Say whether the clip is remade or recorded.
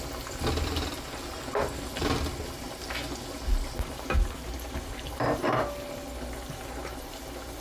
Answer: recorded